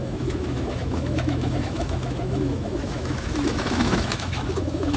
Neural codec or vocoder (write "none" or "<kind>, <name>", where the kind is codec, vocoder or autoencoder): autoencoder, DAC-VAE